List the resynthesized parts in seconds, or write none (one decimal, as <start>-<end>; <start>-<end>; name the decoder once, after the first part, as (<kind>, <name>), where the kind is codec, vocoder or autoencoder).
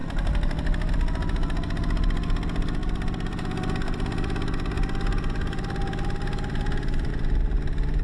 2.8-7.1 (vocoder, BigVGAN v2)